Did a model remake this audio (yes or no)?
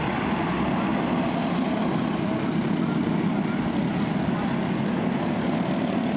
no